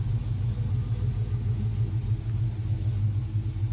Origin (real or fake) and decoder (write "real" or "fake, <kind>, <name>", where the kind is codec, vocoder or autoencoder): real